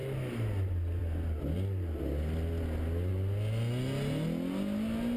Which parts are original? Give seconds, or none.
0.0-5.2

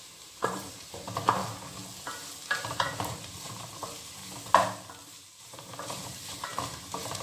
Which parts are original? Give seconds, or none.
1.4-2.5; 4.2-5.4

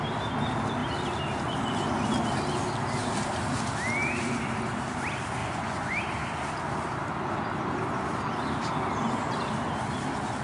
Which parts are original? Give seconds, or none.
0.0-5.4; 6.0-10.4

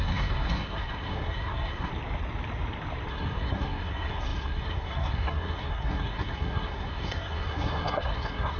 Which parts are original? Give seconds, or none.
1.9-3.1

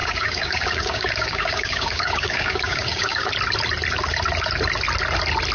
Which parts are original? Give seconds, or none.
3.3-5.5

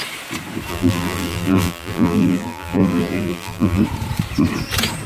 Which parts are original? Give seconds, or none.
0.0-0.7; 3.8-5.1

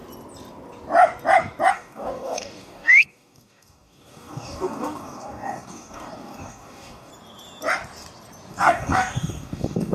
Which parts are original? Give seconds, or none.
0.0-1.7; 7.1-8.5